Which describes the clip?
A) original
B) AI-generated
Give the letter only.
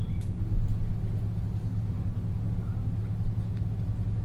A